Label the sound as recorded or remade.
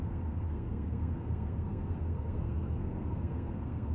remade